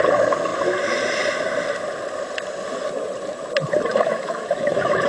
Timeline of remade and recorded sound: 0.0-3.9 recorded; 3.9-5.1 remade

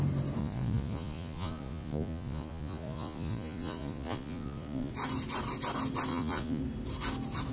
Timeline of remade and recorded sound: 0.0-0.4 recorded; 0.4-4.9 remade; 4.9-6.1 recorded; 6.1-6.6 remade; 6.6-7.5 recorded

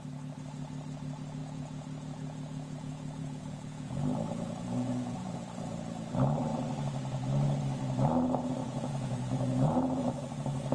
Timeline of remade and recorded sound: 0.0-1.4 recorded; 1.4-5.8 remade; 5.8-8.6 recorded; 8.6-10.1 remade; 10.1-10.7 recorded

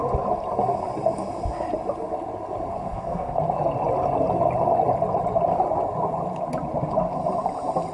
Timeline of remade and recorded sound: 0.0-2.7 recorded; 2.7-3.4 remade; 3.4-7.9 recorded